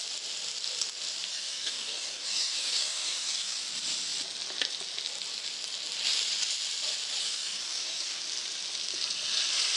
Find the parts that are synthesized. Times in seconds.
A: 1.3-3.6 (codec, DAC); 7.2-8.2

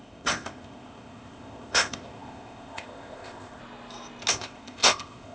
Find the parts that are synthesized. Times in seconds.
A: 0.0-3.6 (codec, ZipCodec); 4.3-5.3

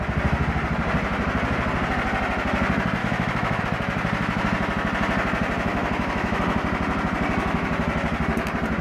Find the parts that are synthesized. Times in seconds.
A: 3.0-3.6 (autoencoder, DAC-VAE); 5.7-6.4

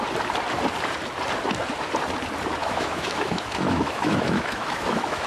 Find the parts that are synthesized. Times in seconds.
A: 2.6-5.3 (autoencoder, DAC-VAE)